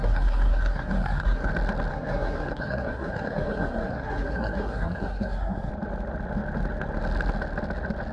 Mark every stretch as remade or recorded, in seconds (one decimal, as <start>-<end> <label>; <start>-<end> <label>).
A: 0.0-1.5 remade; 1.5-1.9 recorded; 1.9-5.7 remade; 5.7-8.1 recorded